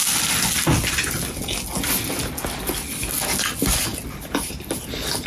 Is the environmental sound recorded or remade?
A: recorded